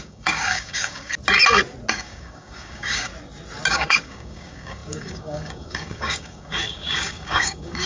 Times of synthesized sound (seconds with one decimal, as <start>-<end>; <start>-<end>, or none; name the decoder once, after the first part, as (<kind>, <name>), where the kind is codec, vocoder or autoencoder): 0.0-1.1 (codec, DAC); 1.9-3.1; 3.7-7.9